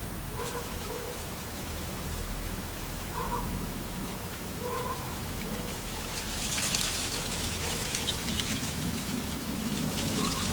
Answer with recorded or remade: remade